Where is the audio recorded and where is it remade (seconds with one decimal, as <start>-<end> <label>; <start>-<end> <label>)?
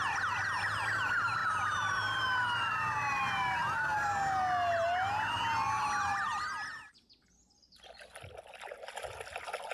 0.0-9.7 recorded